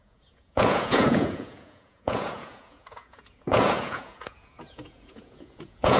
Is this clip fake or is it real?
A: fake